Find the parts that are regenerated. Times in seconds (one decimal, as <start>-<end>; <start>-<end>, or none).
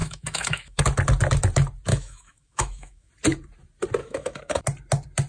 0.0-0.8; 1.9-3.1; 4.0-4.6